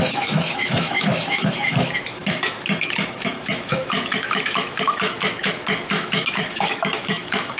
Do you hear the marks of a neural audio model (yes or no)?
yes